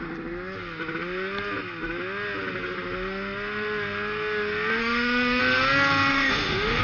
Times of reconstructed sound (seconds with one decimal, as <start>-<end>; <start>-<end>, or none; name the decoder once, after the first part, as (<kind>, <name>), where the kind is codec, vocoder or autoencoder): 4.8-5.4 (autoencoder, DAC-VAE); 6.1-6.8